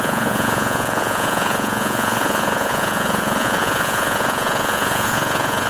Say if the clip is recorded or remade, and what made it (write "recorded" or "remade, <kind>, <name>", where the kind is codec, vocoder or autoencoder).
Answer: remade, vocoder, Vocos